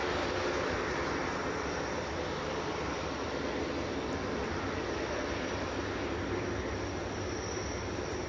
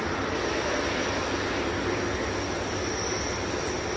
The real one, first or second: second